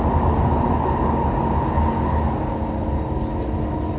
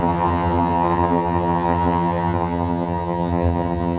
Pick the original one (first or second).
first